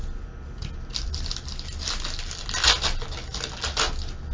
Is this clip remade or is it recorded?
recorded